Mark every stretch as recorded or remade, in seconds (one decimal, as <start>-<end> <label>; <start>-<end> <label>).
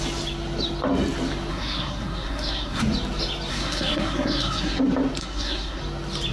0.0-1.5 recorded; 1.5-2.8 remade; 2.8-3.5 recorded; 3.5-4.8 remade; 4.8-5.2 recorded; 5.2-5.8 remade; 5.8-6.3 recorded